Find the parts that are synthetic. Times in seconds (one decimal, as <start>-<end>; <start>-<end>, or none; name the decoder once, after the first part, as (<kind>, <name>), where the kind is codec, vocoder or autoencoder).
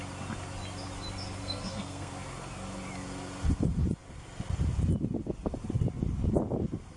1.4-2.1 (codec, SNAC)